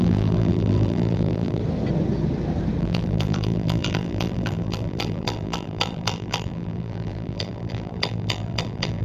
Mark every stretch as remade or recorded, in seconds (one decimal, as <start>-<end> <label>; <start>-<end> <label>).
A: 0.0-1.6 remade; 1.6-2.8 recorded; 2.8-9.0 remade